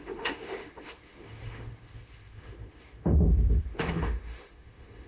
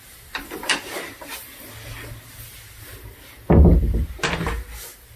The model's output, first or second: first